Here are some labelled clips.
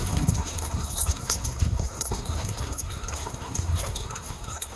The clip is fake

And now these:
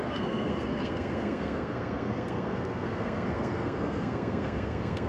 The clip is fake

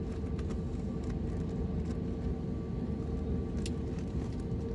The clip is real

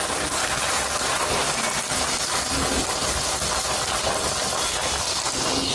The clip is real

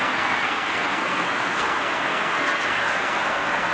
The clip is fake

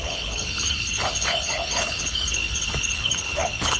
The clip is fake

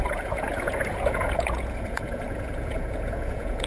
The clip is fake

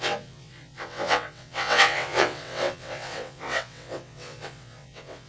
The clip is fake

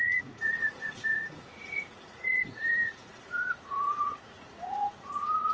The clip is fake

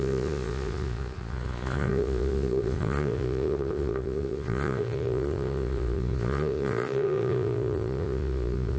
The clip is fake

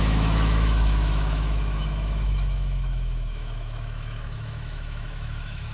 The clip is fake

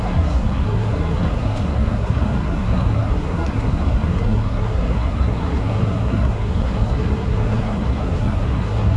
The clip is fake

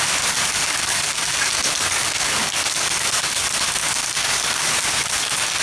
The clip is fake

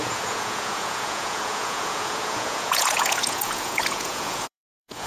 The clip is fake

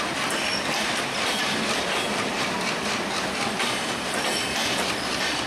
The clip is fake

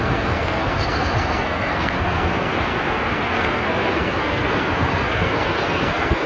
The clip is fake